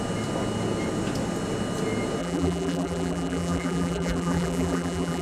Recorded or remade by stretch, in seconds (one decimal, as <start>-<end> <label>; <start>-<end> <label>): 0.0-2.2 recorded; 2.2-5.2 remade